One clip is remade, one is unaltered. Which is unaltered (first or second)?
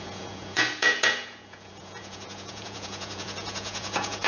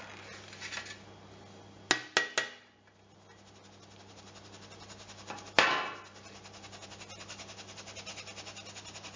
second